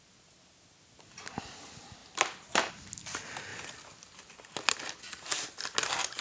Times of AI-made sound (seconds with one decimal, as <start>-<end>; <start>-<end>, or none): none